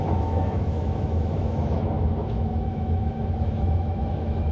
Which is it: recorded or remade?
remade